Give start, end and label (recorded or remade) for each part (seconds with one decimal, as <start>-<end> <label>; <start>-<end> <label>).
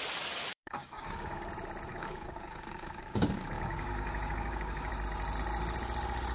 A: 0.0-0.5 recorded; 0.5-1.5 remade; 1.5-1.9 recorded; 1.9-4.9 remade; 4.9-6.3 recorded